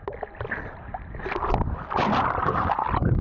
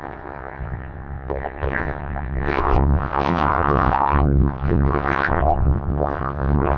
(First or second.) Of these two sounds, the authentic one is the first